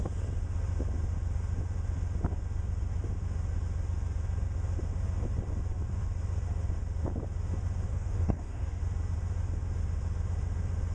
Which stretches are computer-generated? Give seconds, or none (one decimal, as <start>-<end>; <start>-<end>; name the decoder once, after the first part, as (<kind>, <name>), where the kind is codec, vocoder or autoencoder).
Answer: 7.9-8.8 (codec, DAC)